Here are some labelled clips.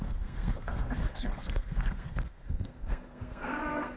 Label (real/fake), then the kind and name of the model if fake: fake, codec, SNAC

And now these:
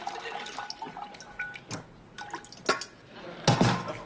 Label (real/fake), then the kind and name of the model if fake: real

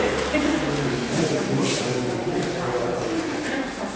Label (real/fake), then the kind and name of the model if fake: real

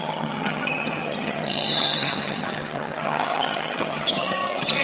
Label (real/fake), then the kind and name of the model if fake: fake, vocoder, HiFi-GAN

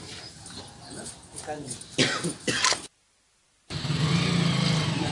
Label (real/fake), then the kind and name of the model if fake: real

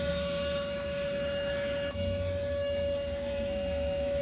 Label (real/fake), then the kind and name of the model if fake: fake, autoencoder, DAC-VAE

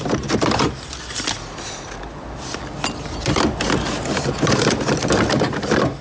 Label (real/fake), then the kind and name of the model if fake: real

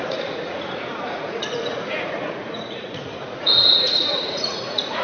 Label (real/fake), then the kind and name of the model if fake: fake, vocoder, Vocos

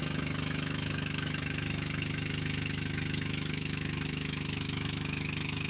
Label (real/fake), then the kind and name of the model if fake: fake, autoencoder, DAC-VAE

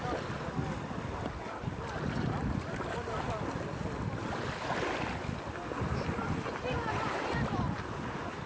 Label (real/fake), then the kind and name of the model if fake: real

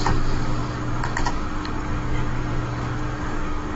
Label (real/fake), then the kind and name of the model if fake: fake, codec, DAC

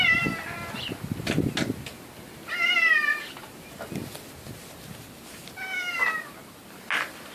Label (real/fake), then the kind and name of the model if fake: real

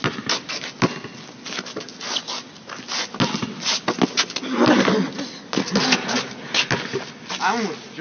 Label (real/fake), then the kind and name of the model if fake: real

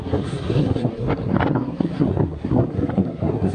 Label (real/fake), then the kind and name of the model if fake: fake, codec, SNAC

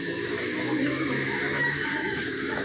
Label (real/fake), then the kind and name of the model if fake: fake, autoencoder, DAC-VAE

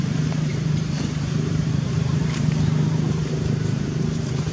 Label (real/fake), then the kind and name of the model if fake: fake, vocoder, BigVGAN v2